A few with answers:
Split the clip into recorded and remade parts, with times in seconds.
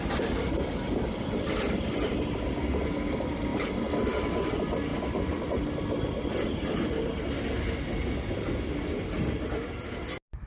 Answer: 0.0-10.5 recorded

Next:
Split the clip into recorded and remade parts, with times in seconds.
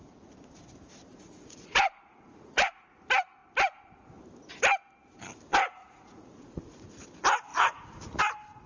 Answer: 0.0-1.1 recorded; 1.1-3.0 remade; 3.0-5.8 recorded; 5.8-6.9 remade; 6.9-7.5 recorded; 7.5-8.2 remade; 8.2-8.7 recorded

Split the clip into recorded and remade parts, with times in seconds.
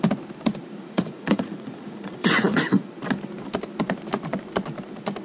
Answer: 0.0-0.8 recorded; 0.8-2.9 remade; 2.9-5.2 recorded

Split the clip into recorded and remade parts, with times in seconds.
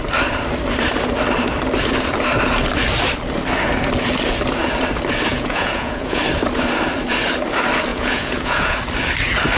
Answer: 0.0-5.3 recorded; 5.3-6.2 remade; 6.2-7.9 recorded; 7.9-8.8 remade; 8.8-9.6 recorded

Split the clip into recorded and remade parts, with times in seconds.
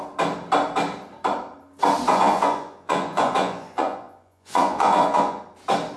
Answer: 0.0-2.1 recorded; 2.1-5.4 remade; 5.4-6.0 recorded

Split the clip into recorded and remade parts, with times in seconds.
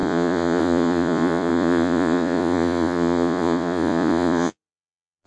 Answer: 0.0-5.3 remade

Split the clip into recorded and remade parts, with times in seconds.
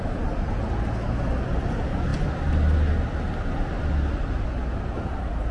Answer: 0.0-5.5 recorded